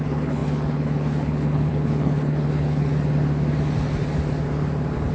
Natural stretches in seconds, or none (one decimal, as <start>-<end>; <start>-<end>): 2.9-5.1

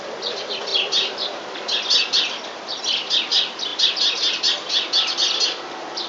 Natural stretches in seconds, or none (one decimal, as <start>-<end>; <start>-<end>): 0.0-6.1

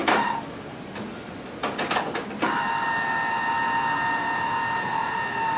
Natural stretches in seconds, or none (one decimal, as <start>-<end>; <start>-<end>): 0.0-5.6

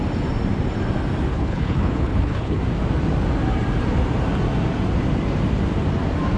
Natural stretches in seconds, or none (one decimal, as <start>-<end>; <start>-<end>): 0.0-1.3; 2.6-6.4

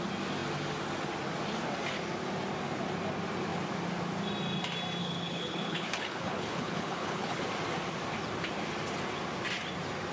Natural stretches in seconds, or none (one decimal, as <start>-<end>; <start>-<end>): 0.0-5.0; 7.4-10.1

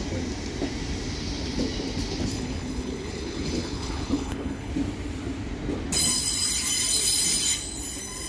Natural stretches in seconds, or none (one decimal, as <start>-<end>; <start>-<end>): 0.0-2.3; 4.7-8.3

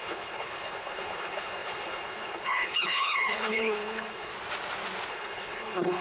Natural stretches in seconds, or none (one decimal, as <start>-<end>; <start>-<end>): 4.3-5.1

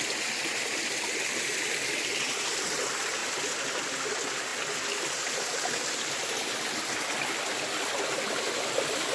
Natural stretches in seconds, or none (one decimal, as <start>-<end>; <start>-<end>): 0.0-9.1